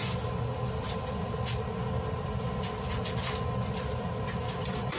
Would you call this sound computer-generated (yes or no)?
no